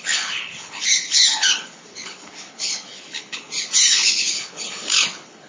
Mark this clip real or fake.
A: fake